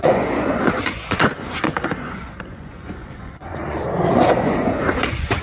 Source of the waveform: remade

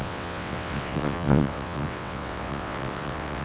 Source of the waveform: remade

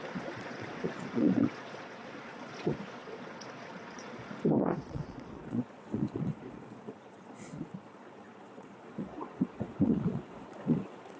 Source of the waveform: remade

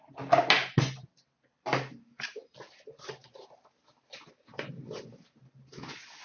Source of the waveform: recorded